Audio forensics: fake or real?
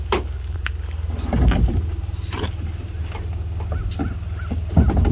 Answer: real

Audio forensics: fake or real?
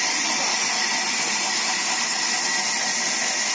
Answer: fake